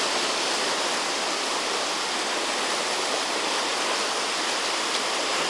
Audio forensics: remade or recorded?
recorded